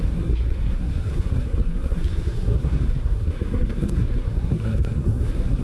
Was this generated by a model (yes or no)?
yes